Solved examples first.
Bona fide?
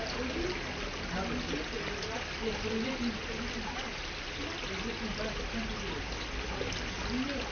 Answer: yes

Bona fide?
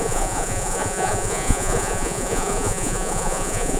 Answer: no